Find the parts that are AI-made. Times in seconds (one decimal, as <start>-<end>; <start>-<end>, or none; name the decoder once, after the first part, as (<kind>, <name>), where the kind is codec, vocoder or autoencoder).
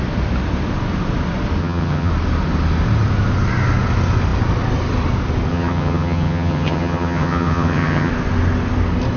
1.6-2.1 (vocoder, HiFi-GAN); 5.5-8.1